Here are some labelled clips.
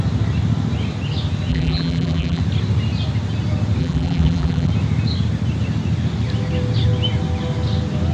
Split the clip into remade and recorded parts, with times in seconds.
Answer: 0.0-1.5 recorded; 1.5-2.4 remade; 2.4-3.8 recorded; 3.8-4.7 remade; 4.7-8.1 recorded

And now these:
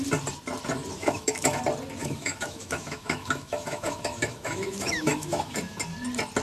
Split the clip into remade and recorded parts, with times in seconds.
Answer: 0.0-1.0 recorded; 1.0-1.6 remade; 1.6-2.0 recorded; 2.0-5.8 remade; 5.8-6.4 recorded

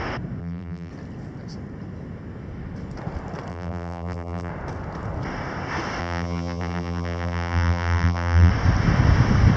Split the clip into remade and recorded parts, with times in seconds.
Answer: 0.0-0.4 recorded; 0.4-0.9 remade; 0.9-3.5 recorded; 3.5-4.5 remade; 4.5-6.0 recorded; 6.0-8.5 remade; 8.5-9.6 recorded

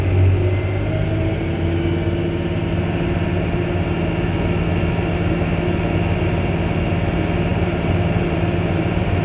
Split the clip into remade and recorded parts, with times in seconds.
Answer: 0.0-7.5 recorded; 7.5-9.2 remade

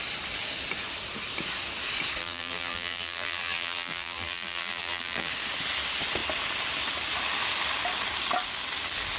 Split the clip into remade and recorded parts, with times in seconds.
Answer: 0.0-2.2 recorded; 2.2-5.3 remade; 5.3-9.2 recorded

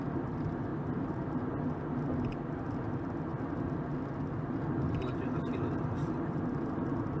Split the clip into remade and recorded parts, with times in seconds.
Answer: 0.0-7.2 recorded

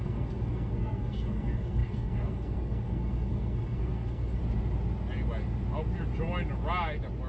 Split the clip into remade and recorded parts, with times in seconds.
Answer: 0.0-4.4 remade; 4.4-7.3 recorded